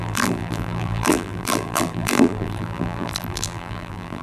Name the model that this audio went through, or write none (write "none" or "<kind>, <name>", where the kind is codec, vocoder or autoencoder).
vocoder, BigVGAN v2